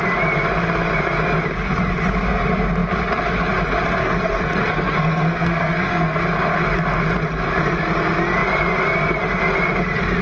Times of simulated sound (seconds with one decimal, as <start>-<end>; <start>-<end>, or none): 4.0-6.2